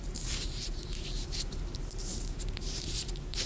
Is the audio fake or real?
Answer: fake